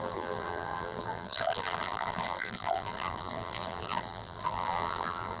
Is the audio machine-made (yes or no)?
yes